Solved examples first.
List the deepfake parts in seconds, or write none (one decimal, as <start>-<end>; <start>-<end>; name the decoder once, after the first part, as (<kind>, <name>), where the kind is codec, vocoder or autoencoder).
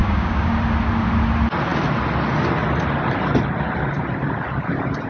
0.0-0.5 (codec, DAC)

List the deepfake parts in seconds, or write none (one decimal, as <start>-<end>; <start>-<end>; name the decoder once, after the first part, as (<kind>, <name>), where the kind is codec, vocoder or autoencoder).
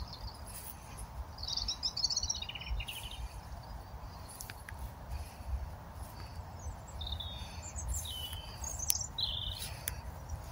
none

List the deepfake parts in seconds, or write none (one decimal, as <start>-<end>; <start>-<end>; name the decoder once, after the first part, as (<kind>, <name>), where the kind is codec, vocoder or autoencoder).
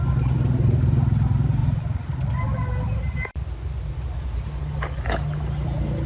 none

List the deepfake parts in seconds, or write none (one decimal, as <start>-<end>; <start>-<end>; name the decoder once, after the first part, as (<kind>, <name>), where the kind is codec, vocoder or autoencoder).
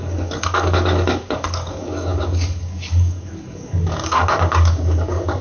0.0-5.4 (codec, DAC)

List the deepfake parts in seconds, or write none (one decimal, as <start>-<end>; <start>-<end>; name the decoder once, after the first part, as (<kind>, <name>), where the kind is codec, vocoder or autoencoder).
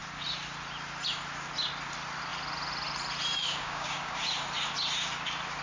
3.4-4.2 (codec, DAC)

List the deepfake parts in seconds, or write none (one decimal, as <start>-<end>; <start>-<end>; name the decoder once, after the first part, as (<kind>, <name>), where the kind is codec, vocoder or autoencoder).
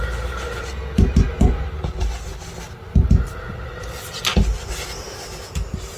none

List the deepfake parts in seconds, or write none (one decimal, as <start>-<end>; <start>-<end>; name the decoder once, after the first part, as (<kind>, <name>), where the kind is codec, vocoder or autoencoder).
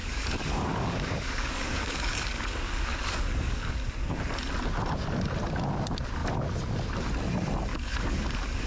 0.0-4.2 (codec, DAC); 7.7-8.7